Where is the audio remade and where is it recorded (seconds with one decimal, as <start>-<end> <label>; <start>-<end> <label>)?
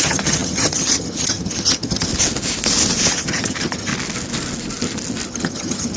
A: 0.0-2.1 remade; 2.1-3.1 recorded; 3.1-3.9 remade; 3.9-5.3 recorded; 5.3-6.0 remade